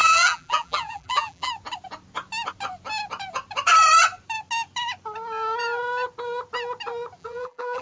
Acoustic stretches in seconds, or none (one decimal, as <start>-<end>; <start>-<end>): 1.5-7.2

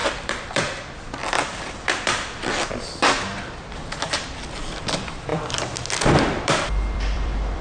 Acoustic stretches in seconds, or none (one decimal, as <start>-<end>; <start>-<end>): 5.3-6.1